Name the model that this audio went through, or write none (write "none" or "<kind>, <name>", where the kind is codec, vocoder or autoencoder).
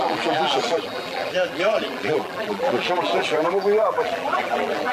vocoder, BigVGAN v2